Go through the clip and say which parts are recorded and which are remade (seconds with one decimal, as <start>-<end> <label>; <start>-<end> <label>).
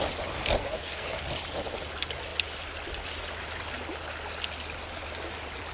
0.0-0.6 recorded; 0.6-1.2 remade; 1.2-5.7 recorded